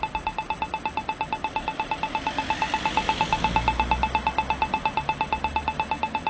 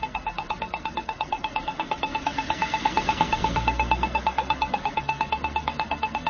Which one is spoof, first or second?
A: second